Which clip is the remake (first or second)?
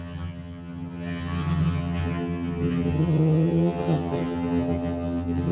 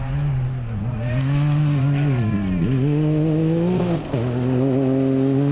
first